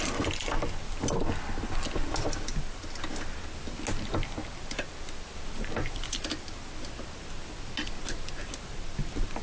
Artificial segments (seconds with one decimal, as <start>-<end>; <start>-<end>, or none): none